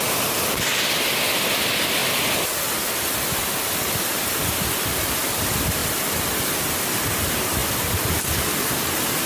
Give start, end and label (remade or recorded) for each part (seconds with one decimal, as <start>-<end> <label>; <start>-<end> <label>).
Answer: 0.0-9.3 recorded